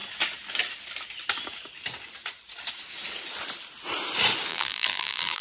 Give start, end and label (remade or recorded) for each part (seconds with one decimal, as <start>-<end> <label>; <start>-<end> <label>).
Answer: 0.0-4.5 recorded; 4.5-5.4 remade